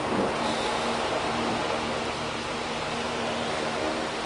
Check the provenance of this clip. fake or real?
fake